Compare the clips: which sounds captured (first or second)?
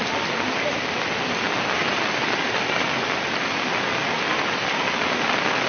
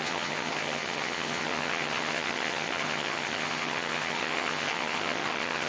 first